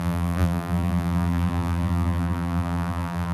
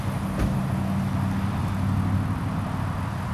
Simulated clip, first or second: first